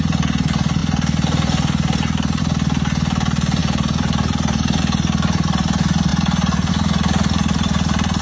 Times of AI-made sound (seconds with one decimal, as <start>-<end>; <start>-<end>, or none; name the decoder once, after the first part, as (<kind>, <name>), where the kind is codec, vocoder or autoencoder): none